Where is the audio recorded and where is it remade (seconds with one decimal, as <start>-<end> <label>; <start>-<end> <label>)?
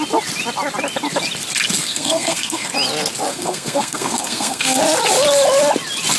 0.0-1.8 recorded; 1.8-2.7 remade; 2.7-3.3 recorded; 3.3-4.8 remade; 4.8-6.2 recorded